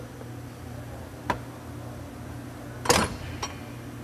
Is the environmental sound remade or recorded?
recorded